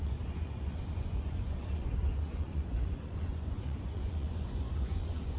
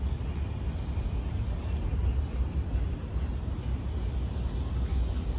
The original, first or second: second